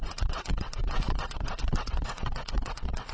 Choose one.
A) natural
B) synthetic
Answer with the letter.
B